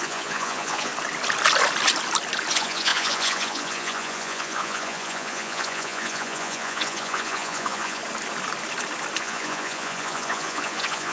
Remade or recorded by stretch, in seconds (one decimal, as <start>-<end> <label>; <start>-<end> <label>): 0.0-0.9 remade; 0.9-2.5 recorded; 2.5-8.0 remade; 8.0-9.2 recorded; 9.2-11.1 remade